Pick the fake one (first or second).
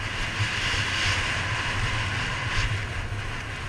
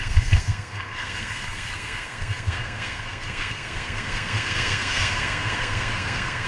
second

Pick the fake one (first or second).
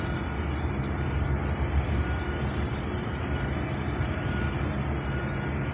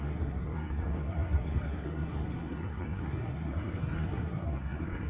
second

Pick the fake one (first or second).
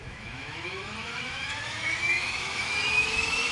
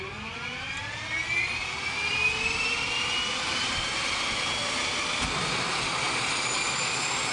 first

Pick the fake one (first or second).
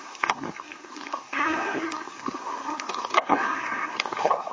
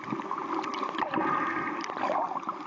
first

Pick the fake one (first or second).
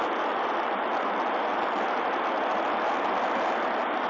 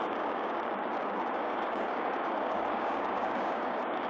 second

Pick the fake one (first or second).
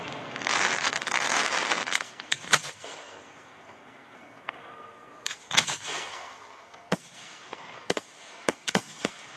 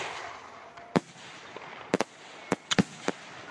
first